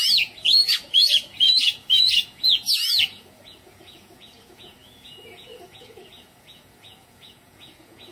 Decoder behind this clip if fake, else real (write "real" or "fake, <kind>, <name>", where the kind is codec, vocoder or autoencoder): fake, vocoder, Vocos